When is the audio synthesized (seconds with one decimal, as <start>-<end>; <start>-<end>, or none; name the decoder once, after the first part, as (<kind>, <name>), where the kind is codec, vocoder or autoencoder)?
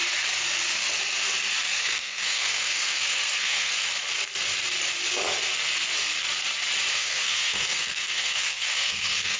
1.7-3.7 (codec, SNAC); 6.9-9.4